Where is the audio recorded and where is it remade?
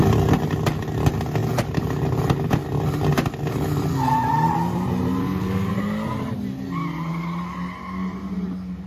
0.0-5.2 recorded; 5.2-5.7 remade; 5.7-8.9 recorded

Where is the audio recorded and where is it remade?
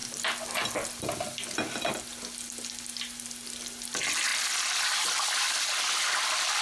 0.0-6.6 recorded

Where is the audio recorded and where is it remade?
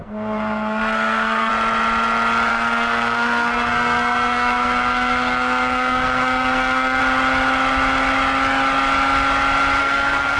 0.0-1.5 remade; 1.5-2.5 recorded; 2.5-7.0 remade; 7.0-9.8 recorded; 9.8-10.4 remade